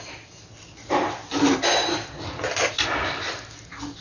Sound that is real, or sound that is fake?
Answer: real